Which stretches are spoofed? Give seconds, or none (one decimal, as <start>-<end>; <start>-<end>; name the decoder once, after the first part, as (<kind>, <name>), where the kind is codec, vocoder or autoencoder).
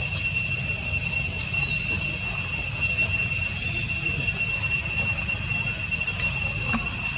none